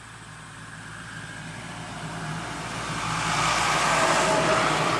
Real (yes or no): yes